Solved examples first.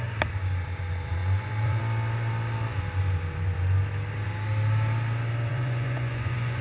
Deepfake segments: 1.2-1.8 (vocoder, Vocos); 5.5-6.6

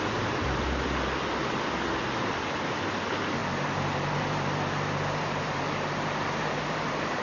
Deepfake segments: 0.0-7.2 (vocoder, BigVGAN v2)

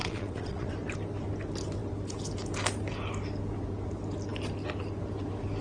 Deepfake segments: 0.0-0.7 (vocoder, WaveNeXt)